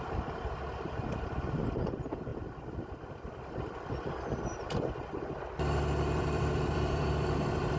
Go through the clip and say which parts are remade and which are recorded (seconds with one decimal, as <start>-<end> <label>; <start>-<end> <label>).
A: 0.0-2.3 recorded; 2.3-7.0 remade; 7.0-7.8 recorded